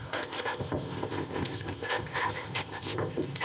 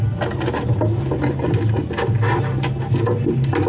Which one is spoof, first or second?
first